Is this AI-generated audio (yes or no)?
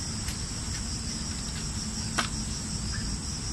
no